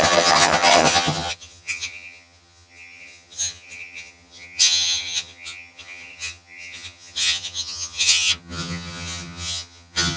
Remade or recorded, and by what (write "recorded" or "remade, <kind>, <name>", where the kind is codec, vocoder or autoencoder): remade, vocoder, HiFi-GAN